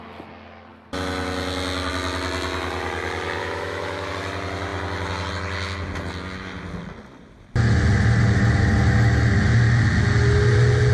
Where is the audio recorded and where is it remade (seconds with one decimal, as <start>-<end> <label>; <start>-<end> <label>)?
0.0-3.4 recorded; 3.4-4.1 remade; 4.1-10.9 recorded